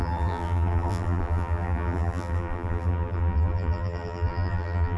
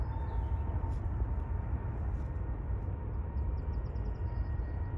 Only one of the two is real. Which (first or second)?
second